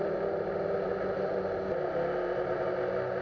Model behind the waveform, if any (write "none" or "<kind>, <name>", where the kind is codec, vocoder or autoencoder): none